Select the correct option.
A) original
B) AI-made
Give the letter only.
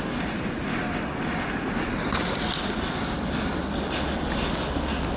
A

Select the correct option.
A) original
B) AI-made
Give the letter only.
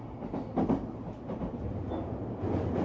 A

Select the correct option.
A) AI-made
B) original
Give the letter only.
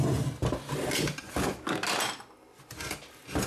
B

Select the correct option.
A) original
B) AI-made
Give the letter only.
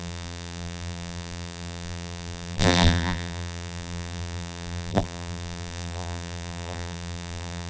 B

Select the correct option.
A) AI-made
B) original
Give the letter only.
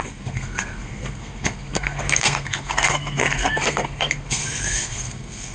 A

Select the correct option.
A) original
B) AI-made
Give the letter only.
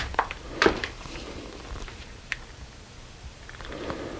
B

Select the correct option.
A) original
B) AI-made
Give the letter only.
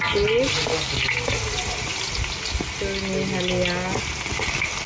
A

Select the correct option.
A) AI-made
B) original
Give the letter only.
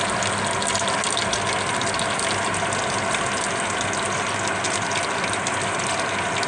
B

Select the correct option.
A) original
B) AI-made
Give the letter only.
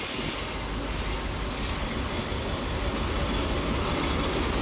A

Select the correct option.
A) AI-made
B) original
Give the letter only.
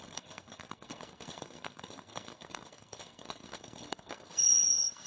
A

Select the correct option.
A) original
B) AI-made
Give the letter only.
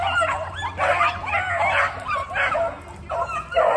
A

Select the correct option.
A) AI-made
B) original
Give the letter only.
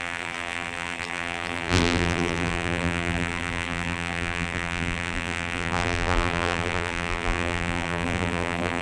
A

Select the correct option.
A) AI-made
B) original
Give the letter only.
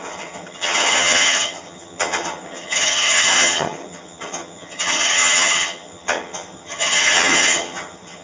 A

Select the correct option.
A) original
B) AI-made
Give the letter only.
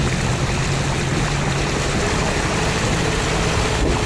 A